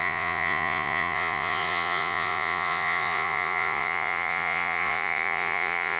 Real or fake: fake